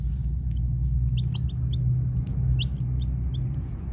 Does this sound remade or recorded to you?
recorded